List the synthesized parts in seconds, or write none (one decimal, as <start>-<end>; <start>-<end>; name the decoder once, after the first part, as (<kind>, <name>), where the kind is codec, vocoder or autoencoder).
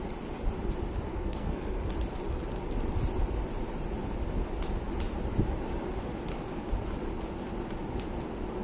1.1-1.8 (codec, SNAC)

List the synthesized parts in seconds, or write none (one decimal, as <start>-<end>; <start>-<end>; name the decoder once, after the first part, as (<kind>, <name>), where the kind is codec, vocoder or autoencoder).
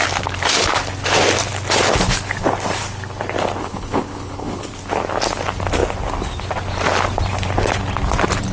3.6-4.7 (codec, HILCodec)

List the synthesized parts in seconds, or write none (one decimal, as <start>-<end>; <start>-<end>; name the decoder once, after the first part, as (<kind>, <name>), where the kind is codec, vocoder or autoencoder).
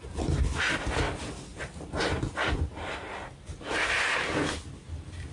1.5-4.7 (vocoder, BigVGAN v2)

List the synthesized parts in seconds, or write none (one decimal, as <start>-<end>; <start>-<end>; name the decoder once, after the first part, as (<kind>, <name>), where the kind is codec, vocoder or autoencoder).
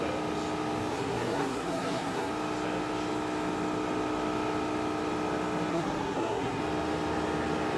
0.9-2.3 (codec, SNAC); 5.7-6.6